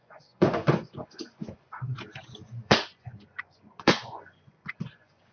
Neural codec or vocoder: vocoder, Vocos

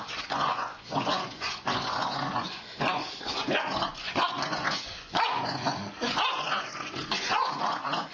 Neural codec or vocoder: vocoder, Vocos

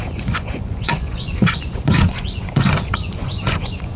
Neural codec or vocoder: vocoder, Vocos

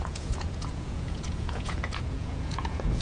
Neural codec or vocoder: vocoder, Vocos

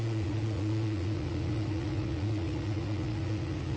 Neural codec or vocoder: vocoder, Vocos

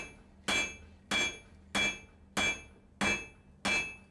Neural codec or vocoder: none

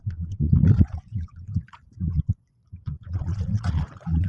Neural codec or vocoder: vocoder, Vocos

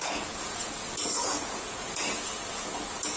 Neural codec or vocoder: vocoder, Vocos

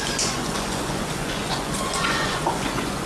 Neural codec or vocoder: vocoder, Vocos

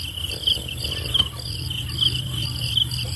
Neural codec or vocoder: none